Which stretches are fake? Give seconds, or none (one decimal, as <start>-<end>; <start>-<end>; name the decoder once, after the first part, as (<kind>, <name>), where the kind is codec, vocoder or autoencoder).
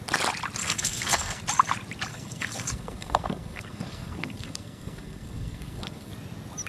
0.6-1.4 (codec, SNAC); 2.1-6.1